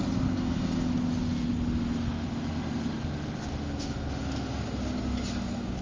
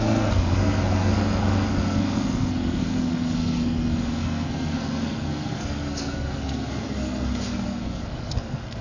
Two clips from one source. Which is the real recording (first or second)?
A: first